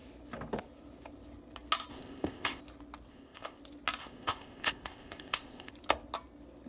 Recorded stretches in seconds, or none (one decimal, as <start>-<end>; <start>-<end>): 0.0-1.9; 2.6-3.1; 3.6-4.0; 5.7-6.7